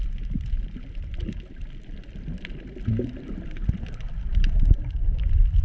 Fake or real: real